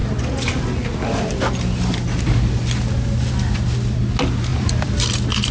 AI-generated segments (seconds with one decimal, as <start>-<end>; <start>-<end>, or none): 4.5-5.0